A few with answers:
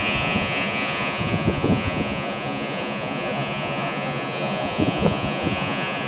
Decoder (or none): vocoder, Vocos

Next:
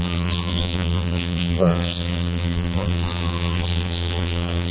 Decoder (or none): vocoder, BigVGAN v2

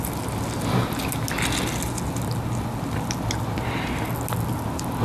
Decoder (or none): none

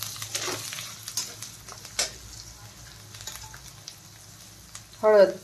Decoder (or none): none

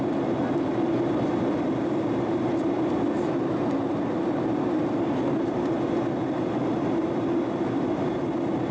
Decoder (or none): none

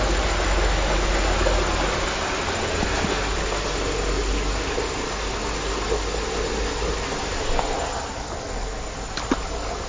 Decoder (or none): none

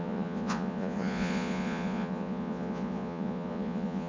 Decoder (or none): vocoder, Vocos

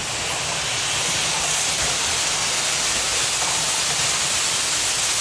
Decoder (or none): none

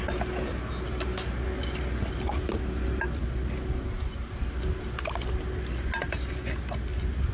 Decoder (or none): none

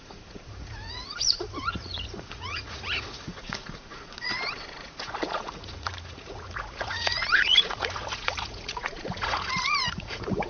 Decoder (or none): vocoder, Vocos